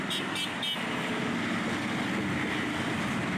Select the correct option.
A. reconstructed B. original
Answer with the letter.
B